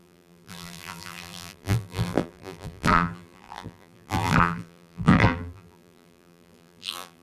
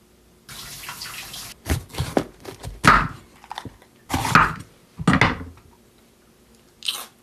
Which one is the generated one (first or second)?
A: first